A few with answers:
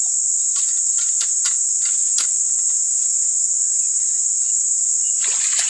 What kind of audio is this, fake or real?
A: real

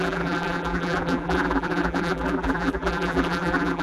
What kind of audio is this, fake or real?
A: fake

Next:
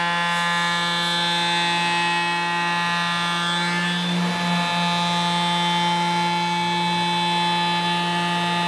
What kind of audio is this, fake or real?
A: real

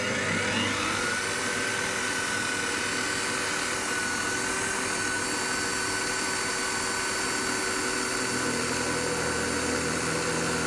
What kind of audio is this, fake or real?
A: real